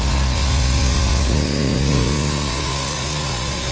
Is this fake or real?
fake